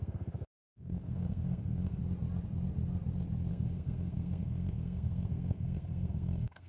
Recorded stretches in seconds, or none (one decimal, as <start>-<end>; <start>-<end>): 2.0-3.5